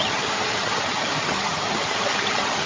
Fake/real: fake